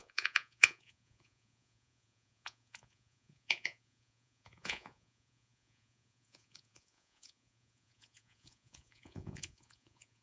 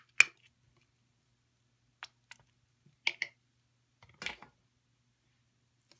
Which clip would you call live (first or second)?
second